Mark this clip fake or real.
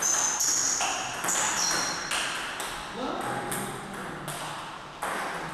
real